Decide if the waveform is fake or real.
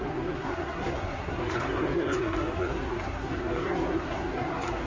fake